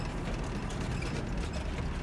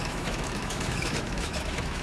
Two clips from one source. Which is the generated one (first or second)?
second